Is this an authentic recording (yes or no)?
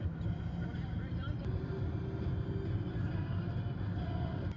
yes